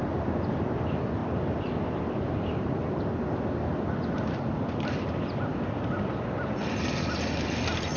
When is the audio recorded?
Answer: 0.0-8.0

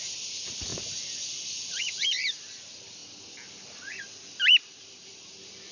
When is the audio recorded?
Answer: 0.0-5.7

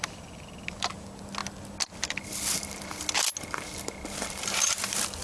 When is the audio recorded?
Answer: 0.0-5.2

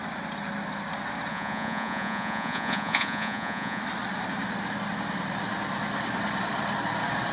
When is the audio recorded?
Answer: 0.0-1.3; 3.8-7.3

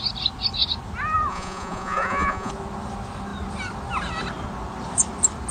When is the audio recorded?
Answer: 0.0-1.3; 2.5-5.5

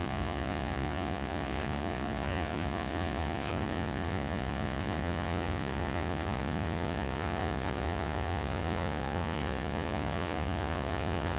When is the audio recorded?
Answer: none

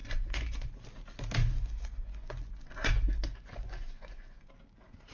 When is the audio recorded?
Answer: 0.7-1.4; 4.5-5.1